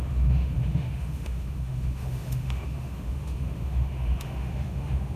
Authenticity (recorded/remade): remade